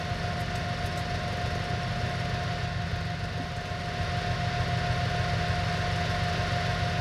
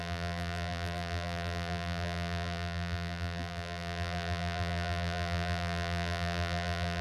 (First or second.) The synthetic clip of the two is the second